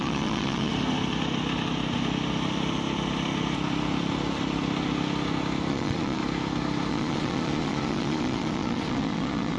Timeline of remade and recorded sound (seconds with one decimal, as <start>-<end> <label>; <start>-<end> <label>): 0.0-0.7 remade; 0.7-5.7 recorded; 5.7-6.2 remade; 6.2-6.9 recorded; 6.9-9.6 remade